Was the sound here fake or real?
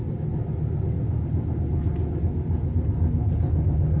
real